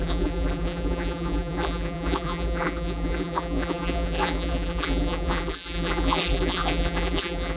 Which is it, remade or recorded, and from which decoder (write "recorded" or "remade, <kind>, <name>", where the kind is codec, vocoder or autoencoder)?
remade, vocoder, BigVGAN v2